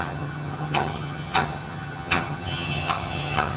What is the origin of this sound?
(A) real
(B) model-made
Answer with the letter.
B